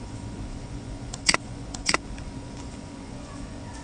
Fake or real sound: fake